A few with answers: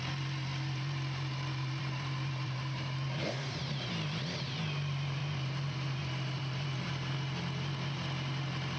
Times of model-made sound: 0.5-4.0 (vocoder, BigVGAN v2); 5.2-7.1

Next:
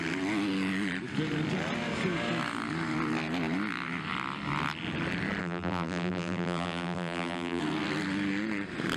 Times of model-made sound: 5.4-7.6 (vocoder, BigVGAN v2)

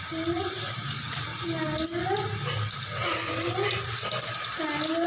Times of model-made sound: 4.0-4.6 (vocoder, BigVGAN v2)

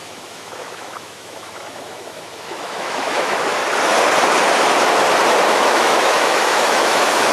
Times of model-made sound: 0.0-3.6 (autoencoder, DAC-VAE); 5.5-7.3

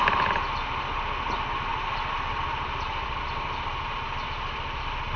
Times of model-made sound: none

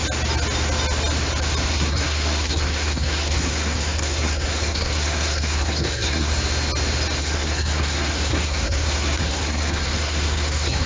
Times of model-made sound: 1.7-6.3 (codec, SNAC); 7.2-10.9